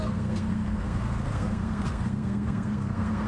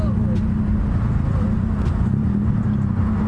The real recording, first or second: second